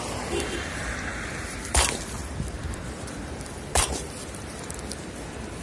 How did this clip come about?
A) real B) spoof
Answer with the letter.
B